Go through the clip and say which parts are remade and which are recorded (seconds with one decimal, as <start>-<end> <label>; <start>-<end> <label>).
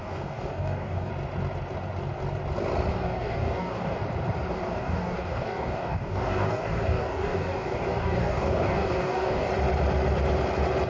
0.0-1.1 remade; 1.1-2.9 recorded; 2.9-4.0 remade; 4.0-4.5 recorded; 4.5-9.5 remade; 9.5-10.9 recorded